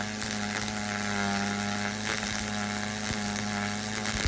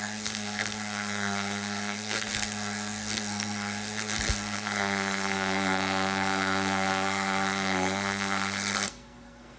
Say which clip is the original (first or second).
first